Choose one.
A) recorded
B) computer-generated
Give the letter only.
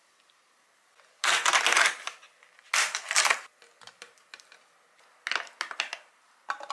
A